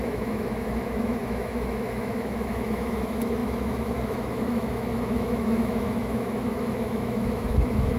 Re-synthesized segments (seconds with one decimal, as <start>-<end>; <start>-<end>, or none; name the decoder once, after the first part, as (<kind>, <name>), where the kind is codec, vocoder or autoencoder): 0.0-8.0 (autoencoder, DAC-VAE)